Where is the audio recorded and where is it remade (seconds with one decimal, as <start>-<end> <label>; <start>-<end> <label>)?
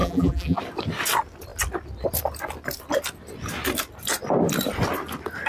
0.0-0.6 remade; 0.6-5.5 recorded